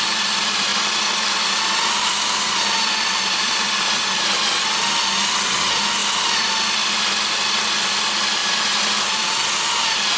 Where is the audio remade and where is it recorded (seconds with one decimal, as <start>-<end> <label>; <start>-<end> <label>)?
0.0-0.7 remade; 0.7-2.9 recorded; 2.9-6.0 remade; 6.0-7.3 recorded; 7.3-8.4 remade; 8.4-10.2 recorded